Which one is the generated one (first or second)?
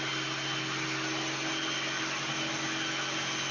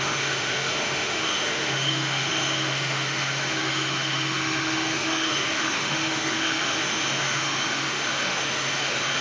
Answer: second